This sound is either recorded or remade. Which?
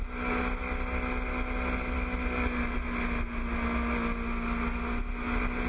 recorded